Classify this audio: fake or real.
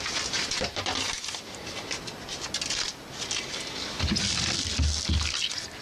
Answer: real